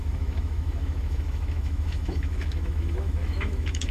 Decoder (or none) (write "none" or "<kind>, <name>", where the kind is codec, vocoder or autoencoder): autoencoder, DAC-VAE